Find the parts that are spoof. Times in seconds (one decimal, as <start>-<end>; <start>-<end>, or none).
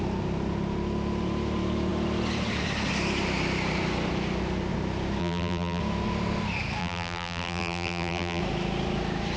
5.2-5.8; 6.8-8.4